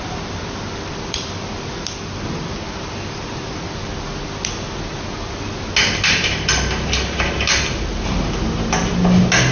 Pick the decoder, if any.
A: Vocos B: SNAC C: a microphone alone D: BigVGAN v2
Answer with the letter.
C